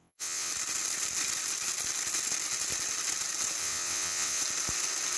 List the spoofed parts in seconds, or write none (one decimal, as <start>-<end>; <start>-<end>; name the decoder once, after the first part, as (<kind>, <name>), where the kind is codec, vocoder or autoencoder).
0.0-0.5 (vocoder, WaveNeXt); 3.6-4.4